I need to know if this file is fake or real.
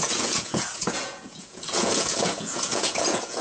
fake